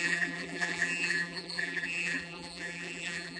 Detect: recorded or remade remade